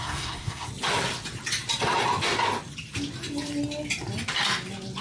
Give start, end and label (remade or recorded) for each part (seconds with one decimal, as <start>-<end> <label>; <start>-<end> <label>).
0.0-0.7 remade; 0.7-5.0 recorded